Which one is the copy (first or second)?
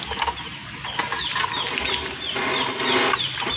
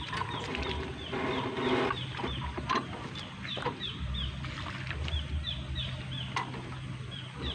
second